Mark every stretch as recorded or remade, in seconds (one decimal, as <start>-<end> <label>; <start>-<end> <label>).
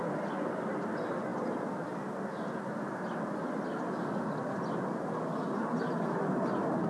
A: 0.0-6.9 recorded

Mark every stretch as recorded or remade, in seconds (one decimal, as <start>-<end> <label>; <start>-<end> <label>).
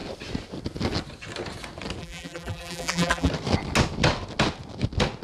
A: 0.0-2.0 recorded; 2.0-3.3 remade; 3.3-5.2 recorded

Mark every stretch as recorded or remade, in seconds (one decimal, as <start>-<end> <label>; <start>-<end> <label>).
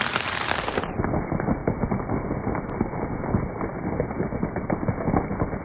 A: 0.0-5.6 recorded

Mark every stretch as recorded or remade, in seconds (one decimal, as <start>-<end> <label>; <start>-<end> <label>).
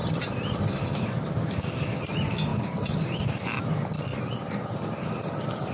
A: 0.0-5.7 recorded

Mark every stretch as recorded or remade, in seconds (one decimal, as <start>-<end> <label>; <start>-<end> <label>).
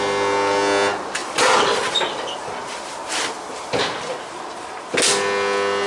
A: 0.0-1.2 recorded; 1.2-4.7 remade; 4.7-5.9 recorded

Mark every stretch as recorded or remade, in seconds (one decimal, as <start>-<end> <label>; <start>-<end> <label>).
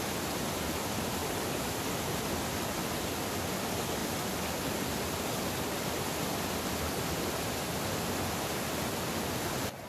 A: 0.0-1.2 recorded; 1.2-1.8 remade; 1.8-9.9 recorded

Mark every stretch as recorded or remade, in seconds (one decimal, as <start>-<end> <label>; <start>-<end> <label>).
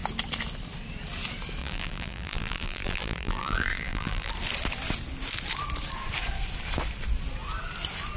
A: 0.0-1.6 recorded; 1.6-4.3 remade; 4.3-8.2 recorded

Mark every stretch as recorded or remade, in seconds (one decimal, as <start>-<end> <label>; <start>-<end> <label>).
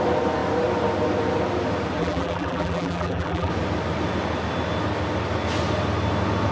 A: 0.0-2.0 recorded; 2.0-3.5 remade; 3.5-6.5 recorded